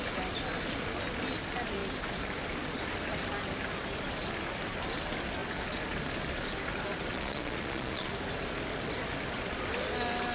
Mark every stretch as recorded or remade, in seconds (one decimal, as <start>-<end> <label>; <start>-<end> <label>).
0.0-7.1 recorded; 7.1-8.1 remade; 8.1-10.3 recorded